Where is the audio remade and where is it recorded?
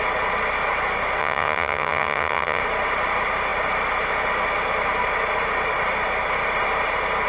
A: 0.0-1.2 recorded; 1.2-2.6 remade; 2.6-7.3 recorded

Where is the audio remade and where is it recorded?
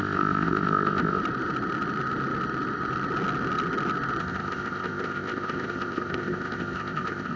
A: 0.0-1.2 remade; 1.2-4.2 recorded; 4.2-7.4 remade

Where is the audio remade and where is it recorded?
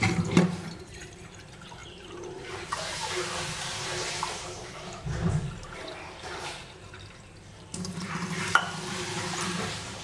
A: 0.0-10.0 remade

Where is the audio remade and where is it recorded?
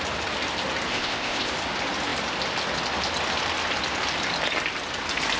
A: 0.0-0.9 recorded; 0.9-1.5 remade; 1.5-5.4 recorded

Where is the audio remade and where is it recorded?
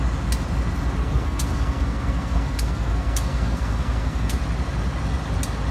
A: 0.0-1.0 recorded; 1.0-4.4 remade; 4.4-5.7 recorded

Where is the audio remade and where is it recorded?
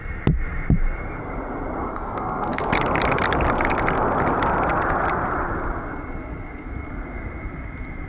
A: 0.0-1.9 recorded; 1.9-2.7 remade; 2.7-8.1 recorded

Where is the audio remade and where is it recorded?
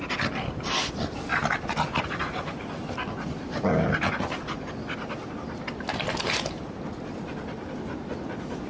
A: 0.0-8.7 recorded